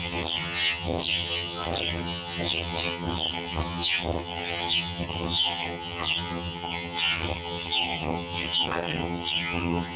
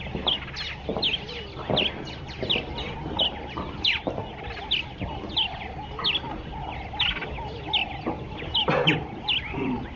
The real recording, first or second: second